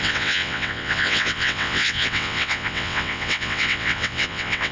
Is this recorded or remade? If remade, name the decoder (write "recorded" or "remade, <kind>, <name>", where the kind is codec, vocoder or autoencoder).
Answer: remade, vocoder, WaveNeXt